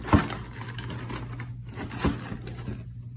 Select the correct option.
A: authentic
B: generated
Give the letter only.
A